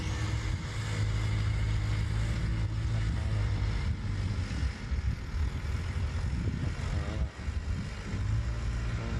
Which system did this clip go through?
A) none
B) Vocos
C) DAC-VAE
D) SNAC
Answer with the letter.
A